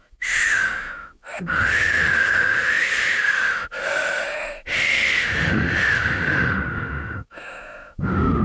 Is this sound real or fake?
fake